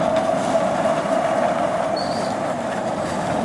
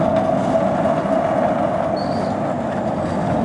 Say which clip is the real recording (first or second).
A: second